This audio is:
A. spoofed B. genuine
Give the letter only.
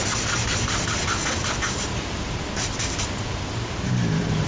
B